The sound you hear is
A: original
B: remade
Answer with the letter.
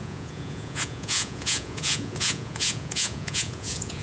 B